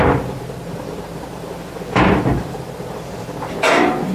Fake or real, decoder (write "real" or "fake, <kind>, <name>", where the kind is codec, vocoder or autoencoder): fake, vocoder, BigVGAN v2